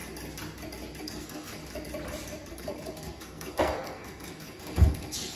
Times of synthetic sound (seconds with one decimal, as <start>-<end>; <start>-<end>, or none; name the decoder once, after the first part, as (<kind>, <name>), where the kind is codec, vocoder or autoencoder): 1.0-1.6 (codec, SNAC); 2.5-5.4